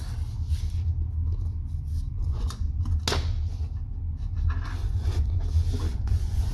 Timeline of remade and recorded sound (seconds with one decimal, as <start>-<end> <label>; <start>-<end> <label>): 0.0-2.2 recorded; 2.2-2.8 remade; 2.8-4.8 recorded; 4.8-5.4 remade; 5.4-5.9 recorded; 5.9-6.5 remade